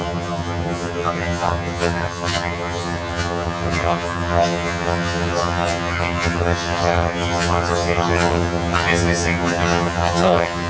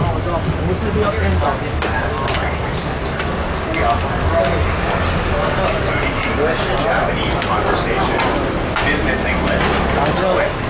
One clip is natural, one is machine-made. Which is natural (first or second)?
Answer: second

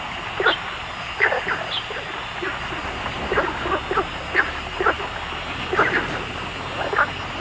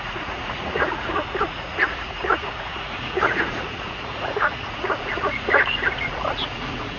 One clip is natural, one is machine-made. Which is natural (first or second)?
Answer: first